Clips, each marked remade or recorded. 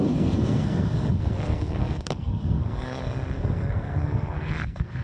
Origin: remade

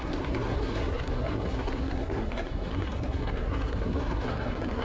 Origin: remade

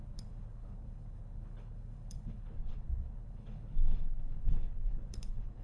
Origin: remade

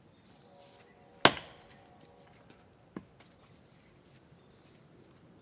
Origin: recorded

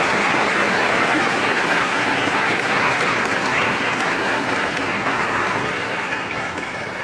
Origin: remade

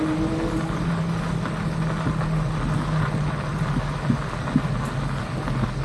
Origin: recorded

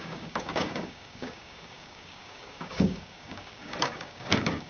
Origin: remade